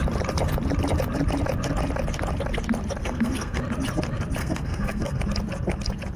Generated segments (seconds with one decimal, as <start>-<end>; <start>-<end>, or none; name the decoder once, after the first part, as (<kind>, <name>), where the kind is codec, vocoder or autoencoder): 3.0-3.6 (codec, SNAC); 4.4-5.2